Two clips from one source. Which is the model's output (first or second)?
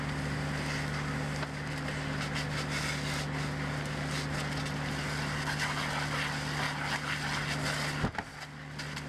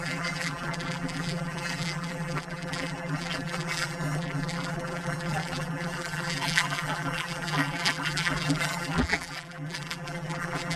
second